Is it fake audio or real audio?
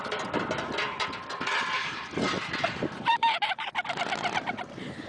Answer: fake